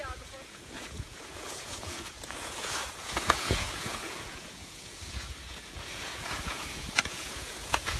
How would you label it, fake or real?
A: fake